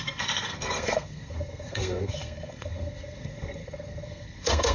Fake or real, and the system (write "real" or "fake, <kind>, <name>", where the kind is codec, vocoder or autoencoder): fake, codec, SNAC